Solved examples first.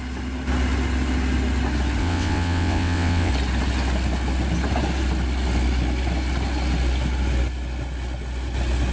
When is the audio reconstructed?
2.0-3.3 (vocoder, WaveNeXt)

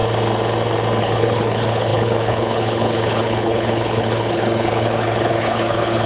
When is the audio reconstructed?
1.0-6.1 (codec, HILCodec)

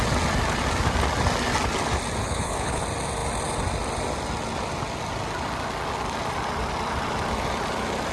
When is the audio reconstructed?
2.2-2.8 (codec, HILCodec)

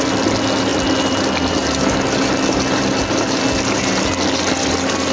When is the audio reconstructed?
none

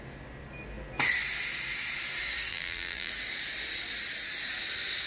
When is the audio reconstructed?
2.5-3.1 (vocoder, BigVGAN v2)

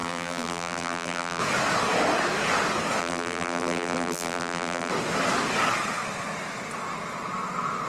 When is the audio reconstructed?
0.0-1.4 (vocoder, BigVGAN v2); 3.0-4.9

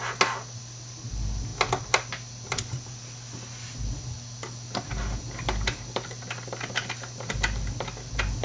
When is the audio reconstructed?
none